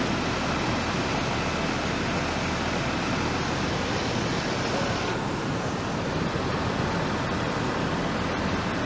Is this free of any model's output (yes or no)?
yes